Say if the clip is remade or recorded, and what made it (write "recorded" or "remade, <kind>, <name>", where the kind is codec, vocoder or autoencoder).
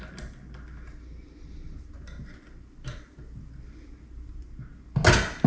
recorded